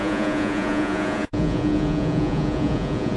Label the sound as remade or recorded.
remade